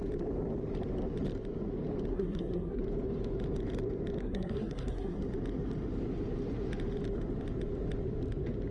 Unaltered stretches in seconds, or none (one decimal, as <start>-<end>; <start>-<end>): 0.0-2.1; 2.8-4.2; 5.2-8.7